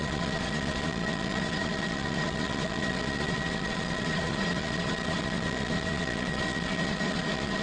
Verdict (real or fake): fake